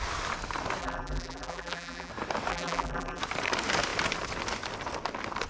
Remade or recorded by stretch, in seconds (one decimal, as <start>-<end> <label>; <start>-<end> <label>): 0.0-0.8 recorded; 0.8-2.1 remade; 2.1-2.5 recorded; 2.5-3.2 remade; 3.2-5.5 recorded